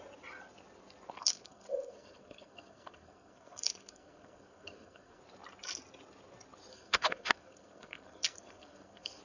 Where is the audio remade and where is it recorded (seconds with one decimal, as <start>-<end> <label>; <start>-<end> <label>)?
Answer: 0.0-1.2 recorded; 1.2-5.2 remade; 5.2-6.7 recorded; 6.7-9.2 remade